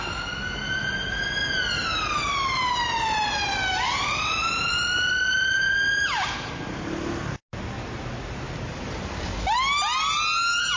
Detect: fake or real real